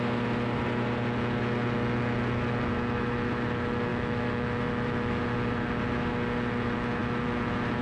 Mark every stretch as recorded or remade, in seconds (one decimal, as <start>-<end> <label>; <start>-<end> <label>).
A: 0.0-3.9 recorded; 3.9-5.2 remade; 5.2-7.8 recorded